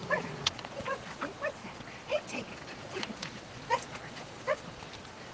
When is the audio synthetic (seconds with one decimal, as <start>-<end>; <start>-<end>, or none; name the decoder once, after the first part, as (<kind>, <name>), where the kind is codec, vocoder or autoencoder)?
0.0-1.2 (vocoder, Vocos); 1.6-4.8